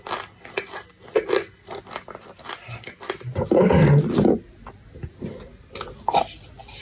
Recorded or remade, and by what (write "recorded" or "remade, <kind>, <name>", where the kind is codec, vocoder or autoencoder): recorded